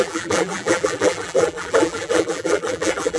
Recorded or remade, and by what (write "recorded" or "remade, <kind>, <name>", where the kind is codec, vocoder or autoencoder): remade, vocoder, BigVGAN v2